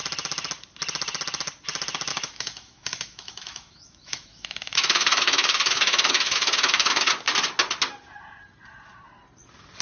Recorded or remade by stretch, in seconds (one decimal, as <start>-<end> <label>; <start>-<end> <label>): 0.0-2.1 recorded; 2.1-7.1 remade; 7.1-9.8 recorded